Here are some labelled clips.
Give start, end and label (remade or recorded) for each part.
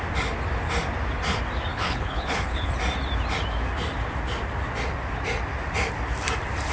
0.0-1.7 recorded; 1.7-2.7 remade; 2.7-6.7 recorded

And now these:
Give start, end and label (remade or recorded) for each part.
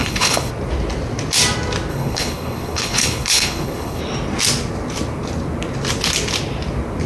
0.0-0.5 remade; 0.5-1.9 recorded; 1.9-4.0 remade; 4.0-7.1 recorded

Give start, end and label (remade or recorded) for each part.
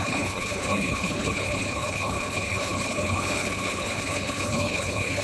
0.0-5.2 remade